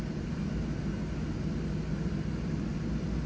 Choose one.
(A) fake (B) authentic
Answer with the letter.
B